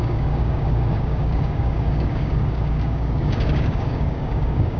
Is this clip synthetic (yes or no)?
yes